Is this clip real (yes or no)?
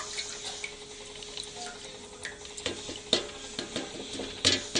yes